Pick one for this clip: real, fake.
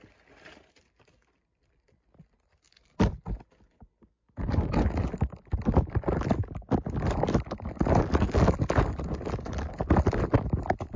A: real